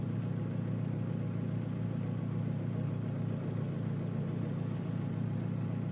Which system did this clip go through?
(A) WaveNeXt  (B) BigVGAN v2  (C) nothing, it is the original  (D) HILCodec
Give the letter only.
C